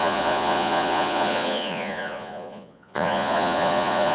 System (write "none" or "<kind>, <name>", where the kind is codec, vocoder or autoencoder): vocoder, Vocos